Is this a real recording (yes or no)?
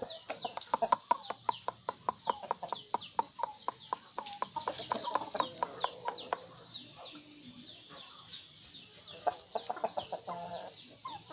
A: yes